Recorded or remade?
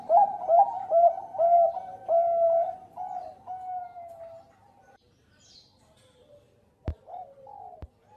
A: recorded